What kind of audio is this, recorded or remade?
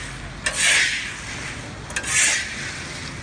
recorded